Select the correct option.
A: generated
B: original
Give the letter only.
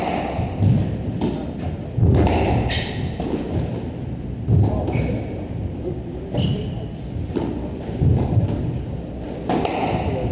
B